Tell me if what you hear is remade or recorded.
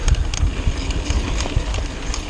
recorded